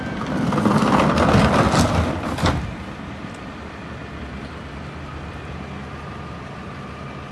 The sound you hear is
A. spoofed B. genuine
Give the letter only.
B